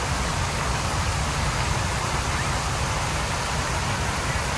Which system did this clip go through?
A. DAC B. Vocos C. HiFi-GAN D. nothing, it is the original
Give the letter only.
D